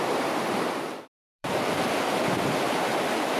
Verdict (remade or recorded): remade